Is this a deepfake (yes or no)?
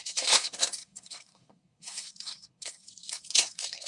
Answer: yes